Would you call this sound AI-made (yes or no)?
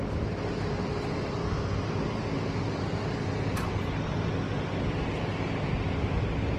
no